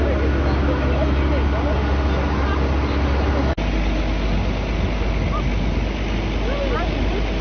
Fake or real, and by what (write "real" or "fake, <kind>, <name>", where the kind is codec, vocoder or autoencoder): real